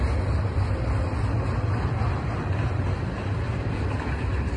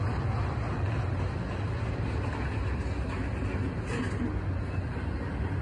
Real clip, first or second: second